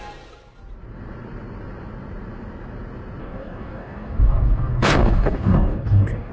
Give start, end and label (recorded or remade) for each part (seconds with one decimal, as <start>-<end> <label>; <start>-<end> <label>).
0.0-3.2 recorded; 3.2-6.3 remade